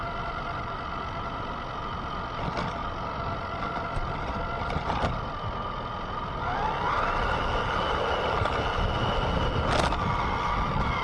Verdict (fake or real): real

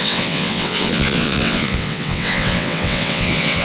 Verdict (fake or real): fake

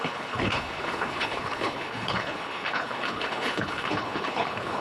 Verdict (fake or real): fake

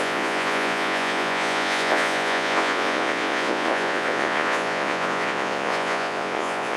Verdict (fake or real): fake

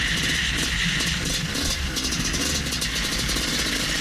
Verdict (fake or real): real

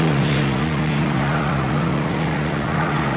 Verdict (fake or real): fake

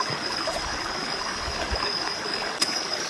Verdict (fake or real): fake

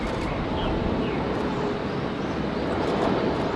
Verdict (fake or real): real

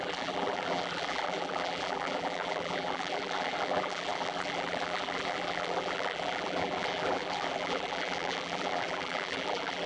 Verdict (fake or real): fake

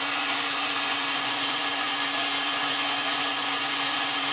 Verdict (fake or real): fake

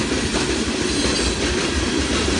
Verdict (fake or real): real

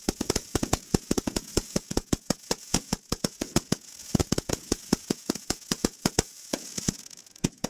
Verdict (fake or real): fake